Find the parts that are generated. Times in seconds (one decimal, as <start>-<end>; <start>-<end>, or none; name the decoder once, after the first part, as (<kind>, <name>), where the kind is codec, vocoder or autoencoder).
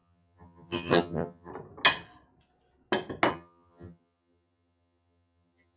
0.0-1.5 (vocoder, HiFi-GAN); 3.3-5.8